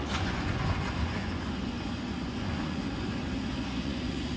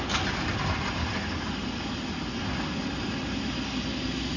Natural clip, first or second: second